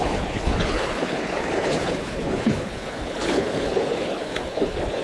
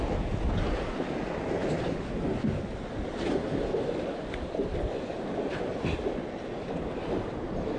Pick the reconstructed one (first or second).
first